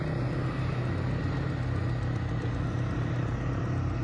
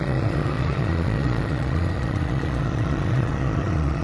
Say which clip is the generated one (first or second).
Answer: second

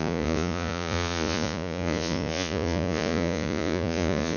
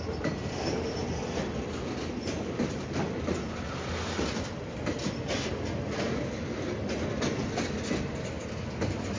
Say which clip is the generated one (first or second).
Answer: first